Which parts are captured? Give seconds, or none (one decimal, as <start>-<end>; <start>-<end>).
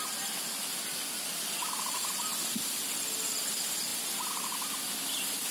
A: 0.0-5.5